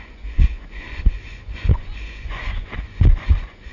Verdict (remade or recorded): remade